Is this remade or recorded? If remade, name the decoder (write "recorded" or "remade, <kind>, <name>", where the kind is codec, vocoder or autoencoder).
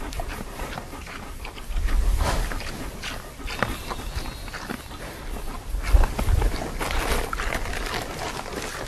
recorded